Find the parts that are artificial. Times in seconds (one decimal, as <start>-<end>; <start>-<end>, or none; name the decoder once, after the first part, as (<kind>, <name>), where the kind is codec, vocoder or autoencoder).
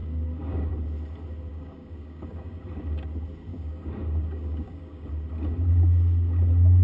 0.0-0.7 (codec, DAC); 1.5-2.6; 3.5-5.1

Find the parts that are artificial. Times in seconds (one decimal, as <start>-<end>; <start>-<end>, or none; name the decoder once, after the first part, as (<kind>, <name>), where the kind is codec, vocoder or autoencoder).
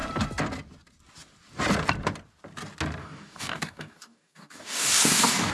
3.0-5.5 (codec, DAC)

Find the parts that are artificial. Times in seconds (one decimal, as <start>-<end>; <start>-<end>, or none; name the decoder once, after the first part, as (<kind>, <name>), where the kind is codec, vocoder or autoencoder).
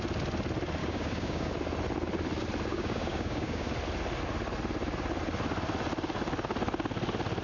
0.8-1.5 (codec, DAC); 2.7-3.7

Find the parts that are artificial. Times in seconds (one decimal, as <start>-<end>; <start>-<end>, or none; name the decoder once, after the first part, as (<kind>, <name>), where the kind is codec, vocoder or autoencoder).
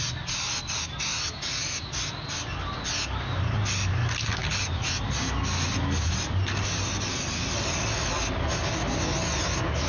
none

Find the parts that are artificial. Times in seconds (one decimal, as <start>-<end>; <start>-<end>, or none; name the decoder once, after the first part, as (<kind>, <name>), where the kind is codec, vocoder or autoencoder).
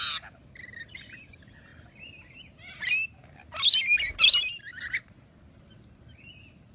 none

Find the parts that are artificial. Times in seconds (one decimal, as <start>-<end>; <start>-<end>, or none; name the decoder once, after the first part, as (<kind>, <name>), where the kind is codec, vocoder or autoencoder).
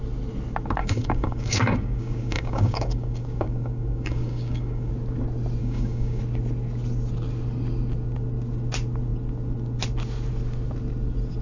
0.8-4.9 (codec, DAC); 5.6-6.2